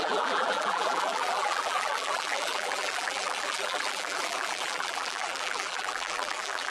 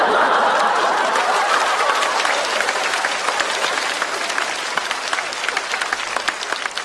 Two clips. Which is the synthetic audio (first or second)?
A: first